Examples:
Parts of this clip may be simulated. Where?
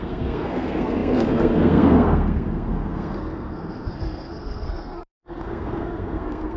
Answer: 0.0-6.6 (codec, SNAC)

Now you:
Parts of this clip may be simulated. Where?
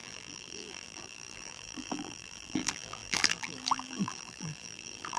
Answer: 0.0-5.2 (vocoder, BigVGAN v2)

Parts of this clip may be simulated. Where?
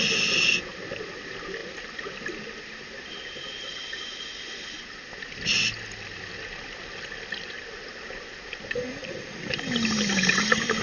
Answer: none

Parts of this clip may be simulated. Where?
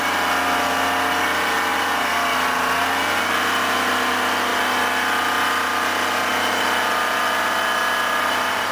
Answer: none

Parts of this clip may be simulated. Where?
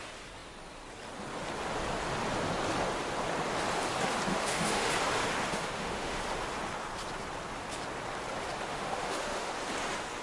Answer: 4.3-4.9 (autoencoder, DAC-VAE); 5.5-6.2; 8.7-9.5